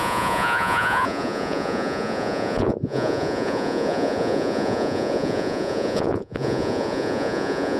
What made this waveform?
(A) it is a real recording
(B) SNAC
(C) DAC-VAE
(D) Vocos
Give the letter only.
D